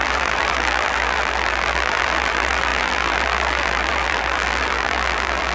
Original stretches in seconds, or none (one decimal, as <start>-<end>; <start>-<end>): none